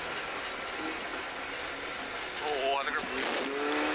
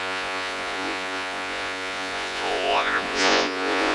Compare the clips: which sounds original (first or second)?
first